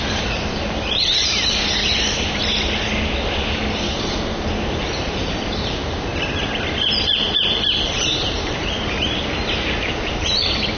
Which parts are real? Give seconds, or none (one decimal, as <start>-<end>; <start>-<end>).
2.4-3.7; 6.1-8.2